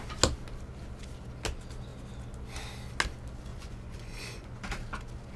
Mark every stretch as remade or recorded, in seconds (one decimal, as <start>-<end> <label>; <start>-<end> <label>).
0.0-3.5 recorded; 3.5-4.6 remade; 4.6-5.4 recorded